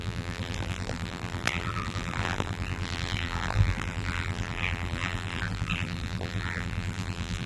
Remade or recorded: remade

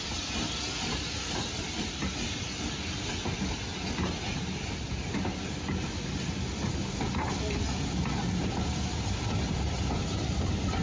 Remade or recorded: recorded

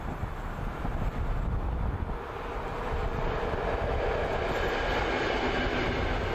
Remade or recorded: recorded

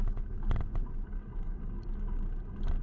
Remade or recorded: recorded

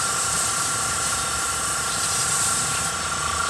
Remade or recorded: remade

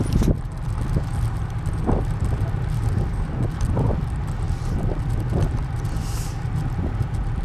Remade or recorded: recorded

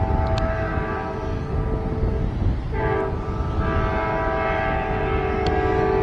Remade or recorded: recorded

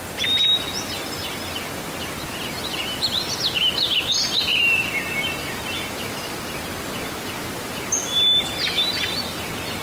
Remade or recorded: recorded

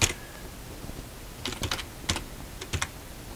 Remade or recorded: recorded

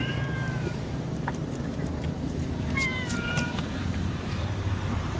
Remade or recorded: remade